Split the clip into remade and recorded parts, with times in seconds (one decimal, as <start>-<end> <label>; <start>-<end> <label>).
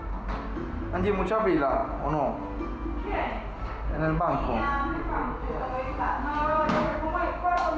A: 0.0-6.5 recorded; 6.5-7.0 remade; 7.0-7.8 recorded